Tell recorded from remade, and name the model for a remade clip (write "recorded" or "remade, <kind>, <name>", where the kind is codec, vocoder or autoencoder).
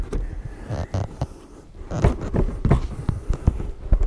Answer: remade, vocoder, BigVGAN v2